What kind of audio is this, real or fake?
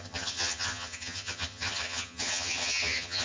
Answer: fake